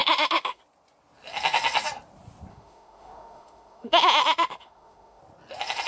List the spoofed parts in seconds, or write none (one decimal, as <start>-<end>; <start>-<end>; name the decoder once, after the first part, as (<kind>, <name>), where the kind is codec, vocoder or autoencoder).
0.0-0.6 (autoencoder, DAC-VAE); 2.5-5.2